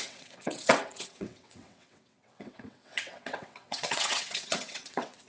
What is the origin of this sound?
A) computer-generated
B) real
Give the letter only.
A